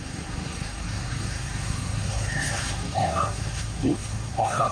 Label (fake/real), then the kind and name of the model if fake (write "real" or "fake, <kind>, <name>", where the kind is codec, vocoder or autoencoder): fake, codec, SNAC